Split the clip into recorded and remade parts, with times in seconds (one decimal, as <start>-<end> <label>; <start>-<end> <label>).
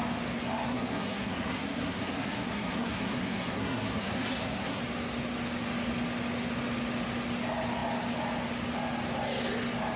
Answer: 0.0-0.7 recorded; 0.7-4.8 remade; 4.8-10.0 recorded